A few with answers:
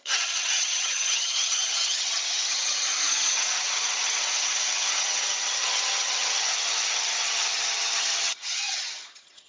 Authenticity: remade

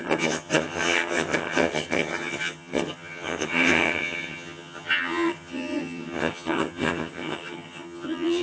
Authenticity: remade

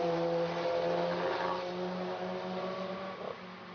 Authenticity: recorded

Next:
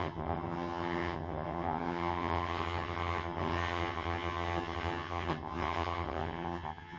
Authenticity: remade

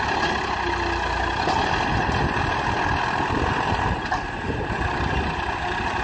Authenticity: recorded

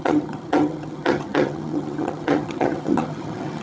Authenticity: remade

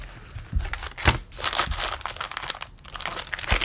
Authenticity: recorded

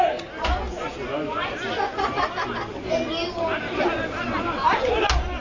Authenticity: recorded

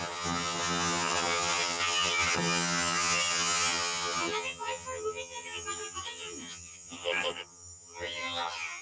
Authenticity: remade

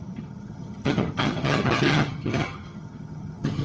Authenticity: remade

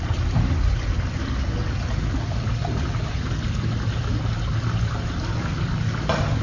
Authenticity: recorded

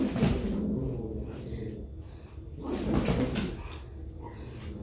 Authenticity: recorded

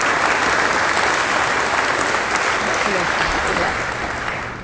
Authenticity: recorded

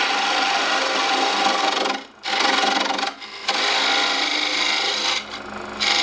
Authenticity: recorded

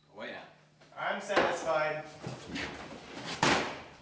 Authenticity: recorded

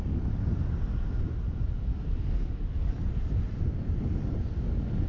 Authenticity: recorded